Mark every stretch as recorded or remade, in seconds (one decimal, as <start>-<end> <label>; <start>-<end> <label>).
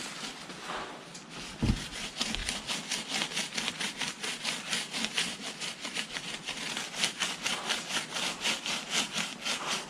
0.0-9.9 recorded